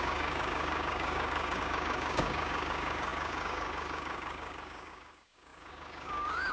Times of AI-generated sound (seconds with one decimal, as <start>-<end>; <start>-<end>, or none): 0.0-6.5